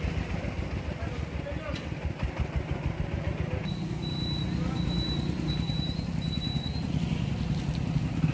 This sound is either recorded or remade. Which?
recorded